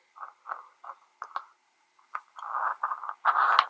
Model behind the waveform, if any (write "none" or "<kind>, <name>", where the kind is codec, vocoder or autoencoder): none